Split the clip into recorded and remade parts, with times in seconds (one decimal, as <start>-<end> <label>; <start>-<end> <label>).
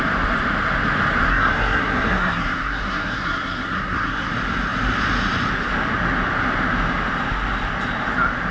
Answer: 0.0-1.3 recorded; 1.3-4.3 remade; 4.3-8.5 recorded